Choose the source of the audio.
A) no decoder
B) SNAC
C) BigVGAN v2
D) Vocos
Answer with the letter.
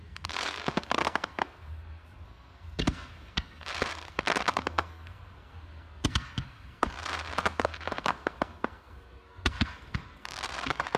B